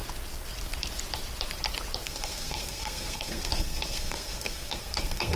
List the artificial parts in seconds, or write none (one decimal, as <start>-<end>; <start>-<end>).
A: 2.0-5.4